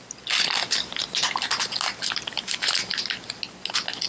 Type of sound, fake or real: real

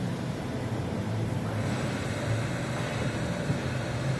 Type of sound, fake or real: real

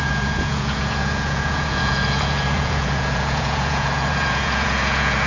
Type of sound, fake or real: fake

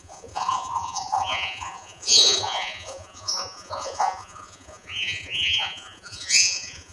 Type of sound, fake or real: fake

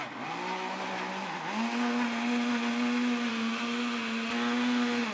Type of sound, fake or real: real